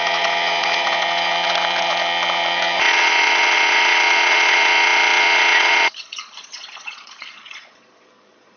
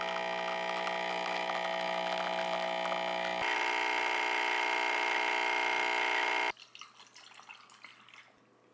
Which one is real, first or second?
second